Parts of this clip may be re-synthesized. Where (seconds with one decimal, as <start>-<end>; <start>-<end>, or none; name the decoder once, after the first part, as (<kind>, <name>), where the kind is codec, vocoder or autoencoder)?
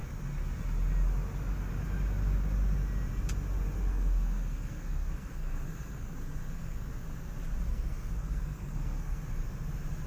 3.9-6.9 (codec, SNAC); 7.7-9.2